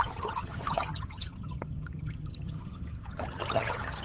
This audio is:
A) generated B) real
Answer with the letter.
A